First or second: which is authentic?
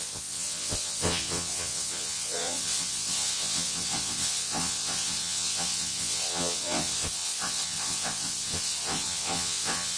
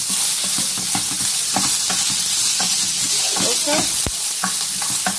second